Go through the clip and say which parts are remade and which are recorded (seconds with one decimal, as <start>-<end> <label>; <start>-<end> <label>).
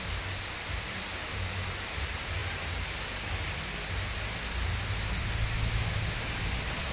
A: 0.0-6.9 recorded